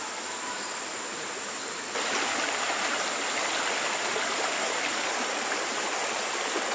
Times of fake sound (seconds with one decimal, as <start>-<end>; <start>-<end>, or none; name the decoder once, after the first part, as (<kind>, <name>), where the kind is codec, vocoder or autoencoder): none